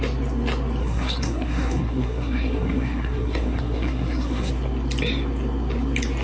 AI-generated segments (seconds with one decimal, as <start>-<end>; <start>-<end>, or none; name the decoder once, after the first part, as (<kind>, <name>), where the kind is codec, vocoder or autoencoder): 0.8-4.5 (codec, SNAC)